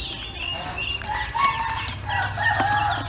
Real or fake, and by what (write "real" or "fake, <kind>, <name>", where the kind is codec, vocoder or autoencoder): real